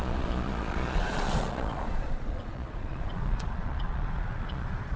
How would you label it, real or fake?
fake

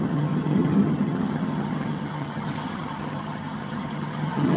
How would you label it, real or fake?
fake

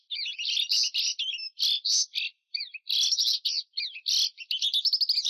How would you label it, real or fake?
real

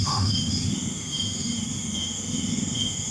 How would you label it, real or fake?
fake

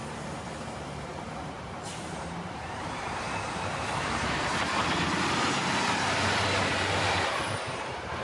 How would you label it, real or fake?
fake